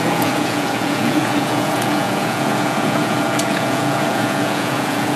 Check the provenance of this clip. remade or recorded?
remade